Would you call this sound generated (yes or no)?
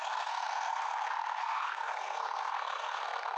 yes